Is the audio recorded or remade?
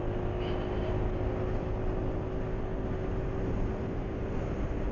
recorded